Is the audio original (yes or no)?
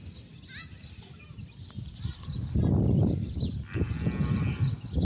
yes